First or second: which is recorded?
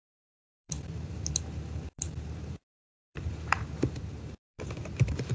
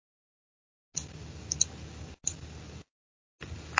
second